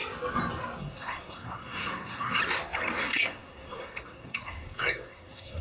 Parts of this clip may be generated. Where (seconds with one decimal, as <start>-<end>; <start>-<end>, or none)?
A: 0.8-2.4; 3.0-5.6